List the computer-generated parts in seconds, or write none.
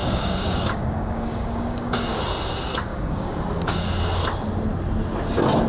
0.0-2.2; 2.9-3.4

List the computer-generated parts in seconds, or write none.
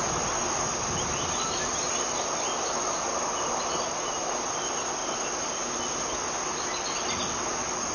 none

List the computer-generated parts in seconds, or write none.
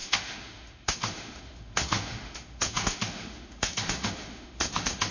0.0-5.1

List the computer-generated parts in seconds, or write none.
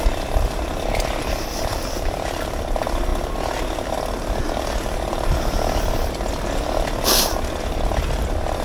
none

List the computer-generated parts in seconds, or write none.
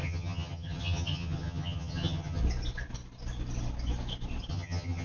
0.0-2.4; 4.5-5.0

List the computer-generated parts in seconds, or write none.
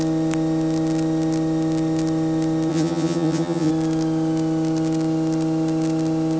2.7-3.7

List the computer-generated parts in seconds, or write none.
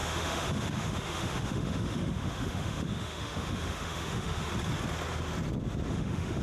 0.0-4.5; 5.9-6.4